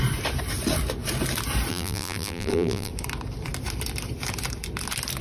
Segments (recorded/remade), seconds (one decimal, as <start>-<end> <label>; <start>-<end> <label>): 0.0-1.7 recorded; 1.7-2.9 remade; 2.9-5.2 recorded